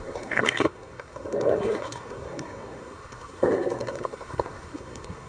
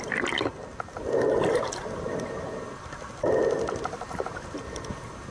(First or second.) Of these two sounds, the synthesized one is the first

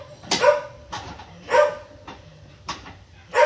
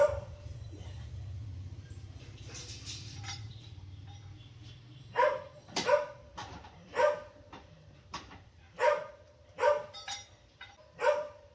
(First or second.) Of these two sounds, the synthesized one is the second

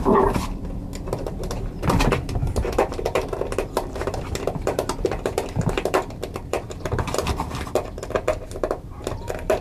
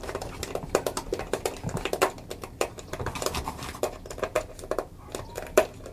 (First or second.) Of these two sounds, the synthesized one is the first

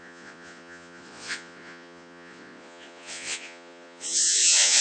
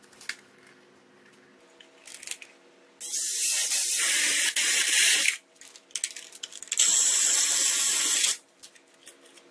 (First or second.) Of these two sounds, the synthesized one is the first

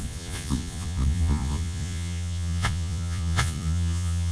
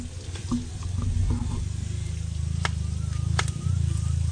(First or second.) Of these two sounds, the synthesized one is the first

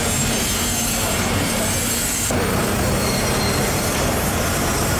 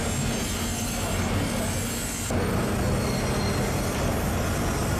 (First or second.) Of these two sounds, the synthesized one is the first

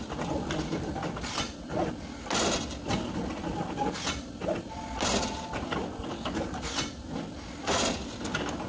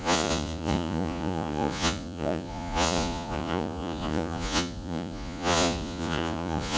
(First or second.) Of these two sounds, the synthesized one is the second